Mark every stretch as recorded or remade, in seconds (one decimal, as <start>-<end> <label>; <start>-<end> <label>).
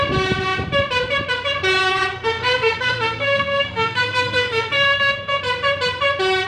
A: 0.0-1.8 recorded; 1.8-5.4 remade; 5.4-6.5 recorded